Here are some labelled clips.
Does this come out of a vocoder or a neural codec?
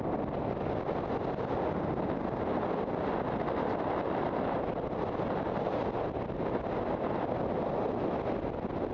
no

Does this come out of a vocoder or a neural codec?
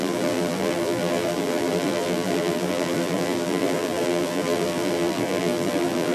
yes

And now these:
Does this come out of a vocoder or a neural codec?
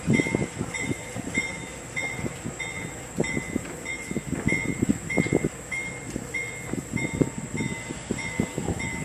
no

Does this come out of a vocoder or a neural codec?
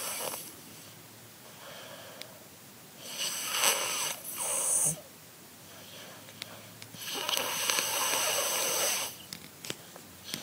no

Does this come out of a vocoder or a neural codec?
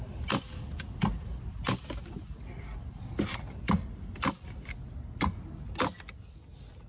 no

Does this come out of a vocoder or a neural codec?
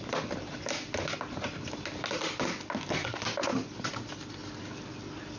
no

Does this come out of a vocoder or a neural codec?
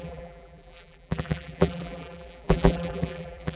yes